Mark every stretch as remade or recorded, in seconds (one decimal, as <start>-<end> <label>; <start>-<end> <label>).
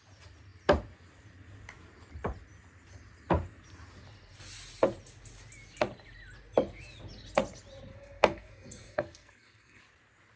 0.0-7.9 recorded; 7.9-9.8 remade; 9.8-10.4 recorded